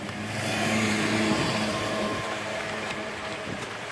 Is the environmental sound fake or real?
fake